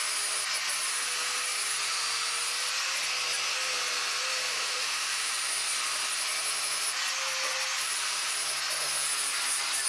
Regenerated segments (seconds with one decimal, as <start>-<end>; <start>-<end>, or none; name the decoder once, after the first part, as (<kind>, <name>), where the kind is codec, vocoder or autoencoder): 4.5-5.3 (autoencoder, DAC-VAE)

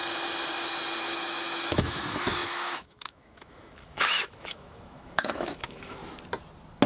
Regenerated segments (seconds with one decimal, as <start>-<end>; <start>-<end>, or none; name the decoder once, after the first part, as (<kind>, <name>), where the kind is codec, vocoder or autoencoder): 1.0-6.0 (autoencoder, DAC-VAE)

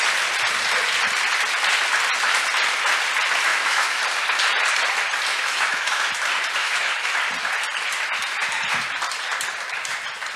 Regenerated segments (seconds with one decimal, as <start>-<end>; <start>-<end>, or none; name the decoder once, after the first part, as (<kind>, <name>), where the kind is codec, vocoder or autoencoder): 3.5-4.0 (autoencoder, DAC-VAE); 5.3-6.1; 6.6-7.1

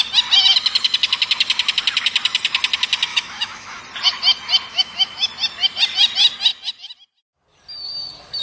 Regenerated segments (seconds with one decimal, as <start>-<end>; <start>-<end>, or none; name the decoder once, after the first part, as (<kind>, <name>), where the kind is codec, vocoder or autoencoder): 3.1-3.8 (autoencoder, DAC-VAE); 4.7-5.3

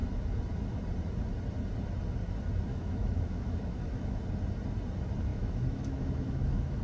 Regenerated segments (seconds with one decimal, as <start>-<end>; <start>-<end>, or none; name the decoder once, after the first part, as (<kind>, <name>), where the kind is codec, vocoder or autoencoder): 2.7-4.2 (autoencoder, DAC-VAE); 5.3-6.8

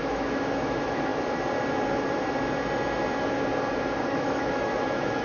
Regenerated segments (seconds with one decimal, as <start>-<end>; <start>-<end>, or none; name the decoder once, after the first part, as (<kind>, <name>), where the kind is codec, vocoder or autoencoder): 0.0-1.1 (autoencoder, DAC-VAE); 4.0-5.2

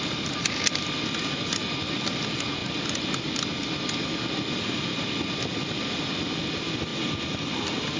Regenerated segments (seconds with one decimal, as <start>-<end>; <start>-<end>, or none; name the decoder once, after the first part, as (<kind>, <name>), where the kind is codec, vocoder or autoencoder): none

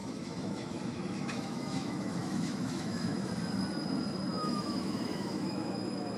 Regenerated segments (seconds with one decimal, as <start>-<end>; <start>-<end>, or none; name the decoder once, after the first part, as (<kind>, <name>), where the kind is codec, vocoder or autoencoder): 0.0-3.3 (autoencoder, DAC-VAE); 4.3-6.2